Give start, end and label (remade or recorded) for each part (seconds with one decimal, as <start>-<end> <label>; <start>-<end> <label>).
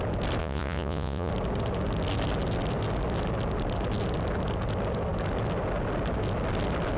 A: 0.0-0.4 recorded; 0.4-1.3 remade; 1.3-7.0 recorded